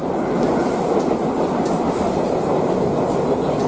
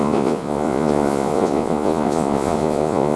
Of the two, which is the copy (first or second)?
second